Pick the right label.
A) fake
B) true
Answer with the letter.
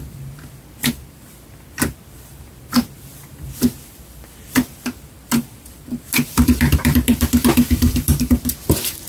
A